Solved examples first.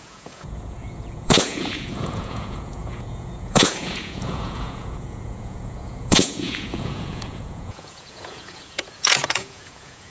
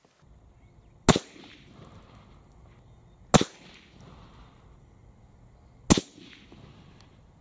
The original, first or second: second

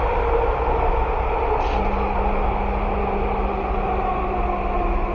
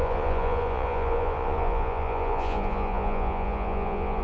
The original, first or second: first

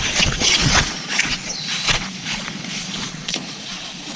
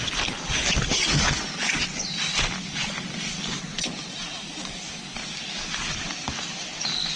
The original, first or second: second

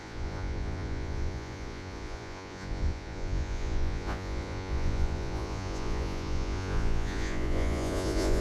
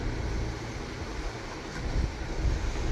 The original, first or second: second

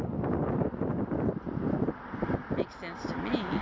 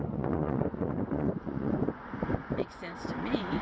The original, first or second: first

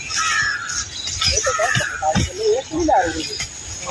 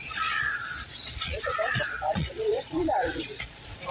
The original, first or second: first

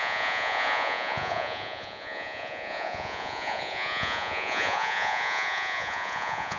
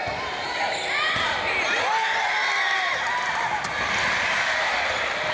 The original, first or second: second